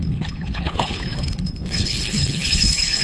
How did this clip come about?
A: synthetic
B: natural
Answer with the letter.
A